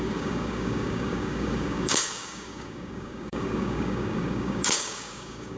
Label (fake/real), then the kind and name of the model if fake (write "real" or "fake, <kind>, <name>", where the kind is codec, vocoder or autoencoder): fake, codec, DAC